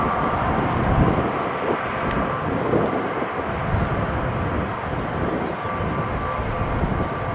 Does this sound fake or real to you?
real